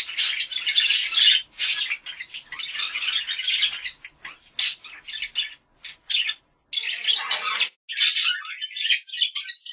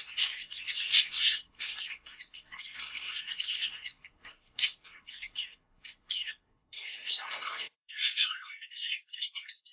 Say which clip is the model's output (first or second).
second